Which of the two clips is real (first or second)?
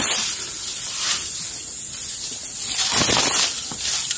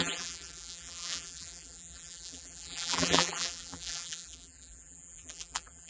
first